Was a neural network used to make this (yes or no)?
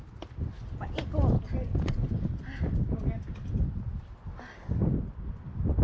no